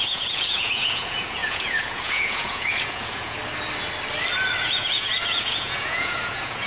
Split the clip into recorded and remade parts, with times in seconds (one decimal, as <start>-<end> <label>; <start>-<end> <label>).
0.0-3.4 remade; 3.4-4.6 recorded; 4.6-6.7 remade